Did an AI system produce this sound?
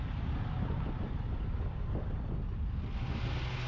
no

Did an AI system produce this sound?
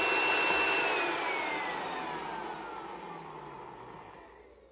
no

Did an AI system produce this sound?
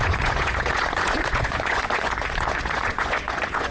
yes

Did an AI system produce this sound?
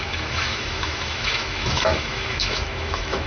yes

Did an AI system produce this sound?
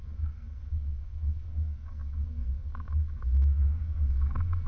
yes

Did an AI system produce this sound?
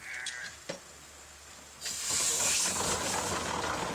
no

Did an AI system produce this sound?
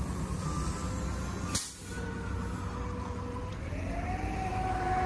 no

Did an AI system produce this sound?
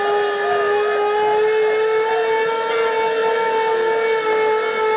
no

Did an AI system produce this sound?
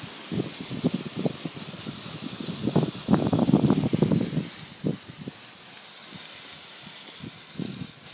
no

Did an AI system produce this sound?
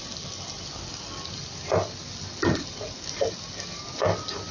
no